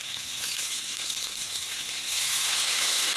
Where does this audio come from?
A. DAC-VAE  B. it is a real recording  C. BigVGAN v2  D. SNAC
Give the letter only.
D